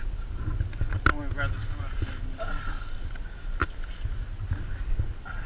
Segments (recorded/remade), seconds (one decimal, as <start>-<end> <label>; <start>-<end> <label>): 0.0-5.5 recorded